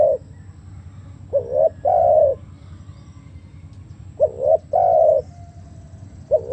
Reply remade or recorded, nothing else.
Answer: recorded